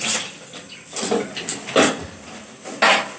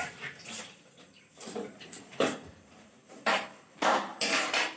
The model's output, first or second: second